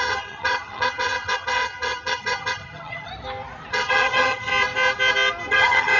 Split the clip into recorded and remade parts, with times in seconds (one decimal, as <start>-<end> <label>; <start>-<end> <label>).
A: 0.0-3.1 remade; 3.1-3.7 recorded; 3.7-4.5 remade; 4.5-5.5 recorded; 5.5-6.0 remade